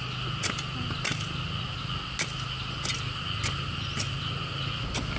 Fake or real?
real